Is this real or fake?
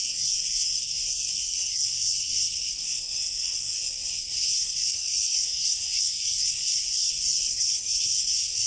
fake